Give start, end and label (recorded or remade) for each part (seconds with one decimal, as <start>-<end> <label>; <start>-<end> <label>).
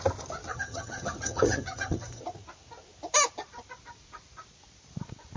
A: 0.0-0.5 recorded; 0.5-2.2 remade; 2.2-5.4 recorded